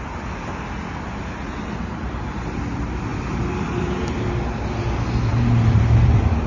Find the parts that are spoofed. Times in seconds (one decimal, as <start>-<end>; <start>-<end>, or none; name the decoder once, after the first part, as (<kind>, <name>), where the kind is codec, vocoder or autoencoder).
1.9-2.6 (vocoder, BigVGAN v2); 3.1-4.4; 5.3-5.8